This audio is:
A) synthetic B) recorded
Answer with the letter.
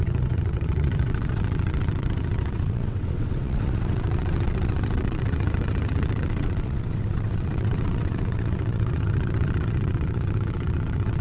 A